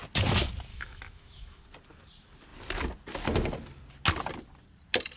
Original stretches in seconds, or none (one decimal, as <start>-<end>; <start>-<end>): 0.0-0.7; 1.6-5.2